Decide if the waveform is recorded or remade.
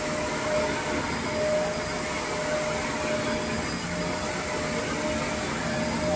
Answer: recorded